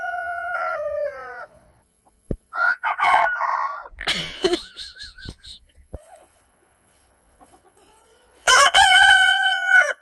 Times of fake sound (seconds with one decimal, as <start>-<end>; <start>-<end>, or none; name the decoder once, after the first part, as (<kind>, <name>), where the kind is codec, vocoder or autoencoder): 0.0-3.2 (vocoder, Vocos); 4.2-10.0